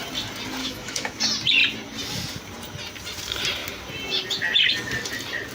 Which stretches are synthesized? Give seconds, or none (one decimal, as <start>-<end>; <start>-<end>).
0.6-1.2